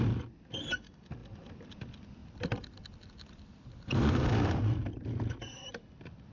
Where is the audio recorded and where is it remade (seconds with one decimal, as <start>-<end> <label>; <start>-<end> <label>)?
0.0-2.2 recorded; 2.2-5.7 remade; 5.7-6.3 recorded